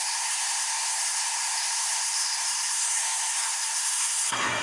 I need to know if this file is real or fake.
fake